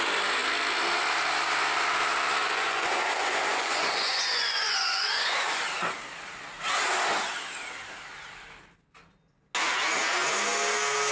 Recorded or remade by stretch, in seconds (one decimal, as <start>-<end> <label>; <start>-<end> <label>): 0.0-2.4 recorded; 2.4-5.6 remade; 5.6-11.1 recorded